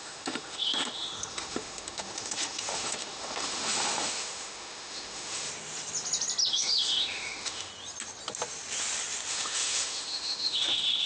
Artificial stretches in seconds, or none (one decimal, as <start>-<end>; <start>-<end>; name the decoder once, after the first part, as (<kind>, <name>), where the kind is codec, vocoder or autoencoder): 0.0-5.5 (autoencoder, DAC-VAE); 6.5-7.7; 9.3-11.1